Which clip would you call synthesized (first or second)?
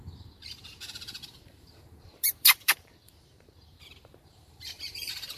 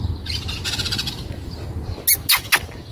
first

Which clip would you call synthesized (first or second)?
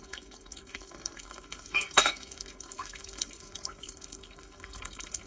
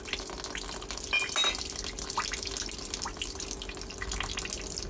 first